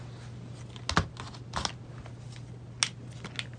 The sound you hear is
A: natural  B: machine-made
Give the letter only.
A